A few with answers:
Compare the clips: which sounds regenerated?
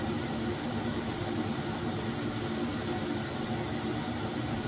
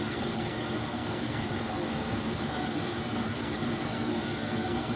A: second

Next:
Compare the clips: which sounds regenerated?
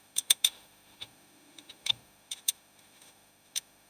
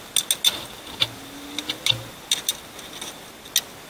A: first